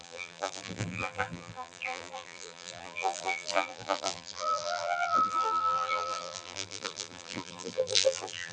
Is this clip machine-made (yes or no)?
yes